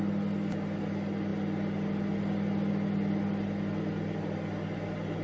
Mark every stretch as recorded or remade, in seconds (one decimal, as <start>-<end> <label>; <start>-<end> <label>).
0.0-5.2 recorded